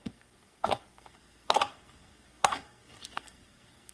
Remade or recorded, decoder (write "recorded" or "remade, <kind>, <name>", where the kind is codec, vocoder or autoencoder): remade, codec, SNAC